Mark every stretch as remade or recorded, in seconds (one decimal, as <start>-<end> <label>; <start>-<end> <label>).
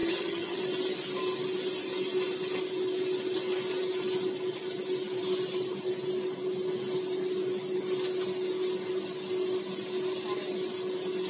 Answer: 0.0-0.6 remade; 0.6-11.3 recorded